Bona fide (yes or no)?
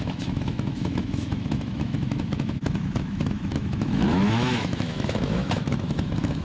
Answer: no